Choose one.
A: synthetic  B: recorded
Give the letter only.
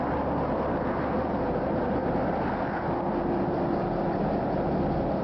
B